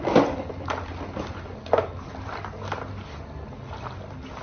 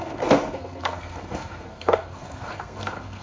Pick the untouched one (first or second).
first